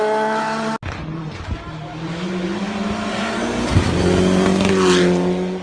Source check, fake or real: real